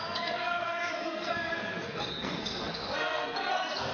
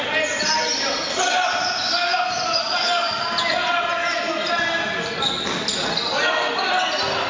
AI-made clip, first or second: first